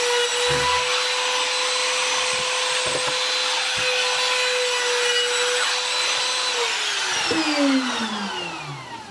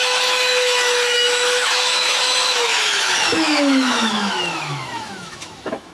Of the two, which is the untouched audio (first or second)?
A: first